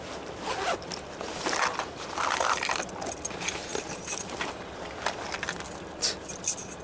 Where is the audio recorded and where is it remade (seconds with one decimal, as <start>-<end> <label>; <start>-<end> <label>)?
0.0-6.8 recorded